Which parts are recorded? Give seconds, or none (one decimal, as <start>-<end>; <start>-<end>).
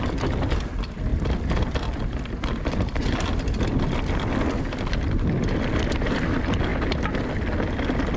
0.0-8.2